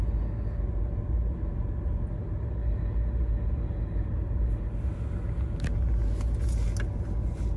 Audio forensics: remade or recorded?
recorded